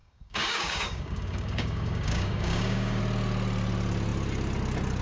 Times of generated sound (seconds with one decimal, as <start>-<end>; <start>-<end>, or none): 0.0-3.0